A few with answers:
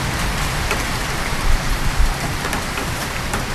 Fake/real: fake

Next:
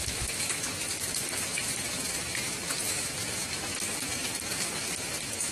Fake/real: fake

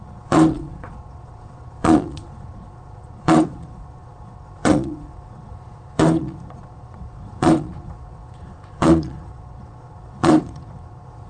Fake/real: fake